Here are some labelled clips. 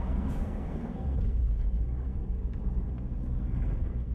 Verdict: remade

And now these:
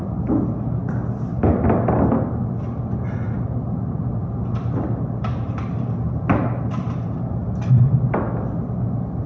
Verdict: recorded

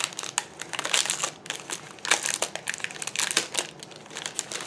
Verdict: recorded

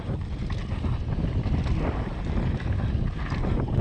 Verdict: recorded